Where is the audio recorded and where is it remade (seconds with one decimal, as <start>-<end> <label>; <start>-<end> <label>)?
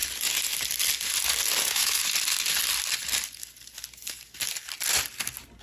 0.0-1.6 recorded; 1.6-2.0 remade; 2.0-5.6 recorded